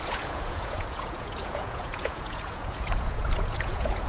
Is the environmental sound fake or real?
fake